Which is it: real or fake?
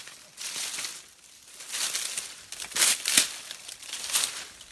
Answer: real